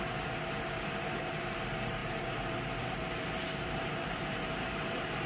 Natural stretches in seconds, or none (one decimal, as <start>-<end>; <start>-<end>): none